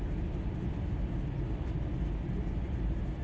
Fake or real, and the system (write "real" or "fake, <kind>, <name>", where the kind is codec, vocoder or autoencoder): real